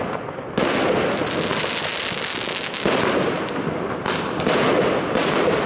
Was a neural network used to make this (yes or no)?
no